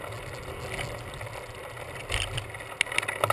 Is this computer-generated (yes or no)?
no